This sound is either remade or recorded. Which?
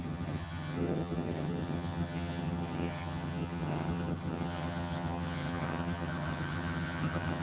remade